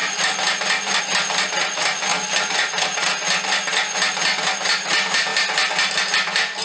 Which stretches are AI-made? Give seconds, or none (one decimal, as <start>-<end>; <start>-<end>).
2.1-2.7